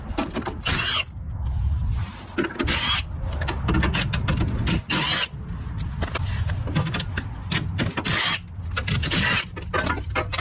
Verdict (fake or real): real